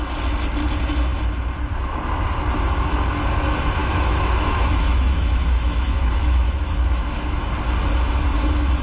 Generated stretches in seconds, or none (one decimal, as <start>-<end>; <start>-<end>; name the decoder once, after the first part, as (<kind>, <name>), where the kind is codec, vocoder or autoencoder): 3.8-7.5 (autoencoder, DAC-VAE)